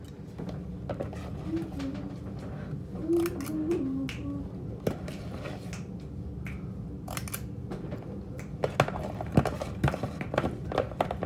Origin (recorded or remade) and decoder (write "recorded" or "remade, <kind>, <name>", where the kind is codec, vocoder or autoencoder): recorded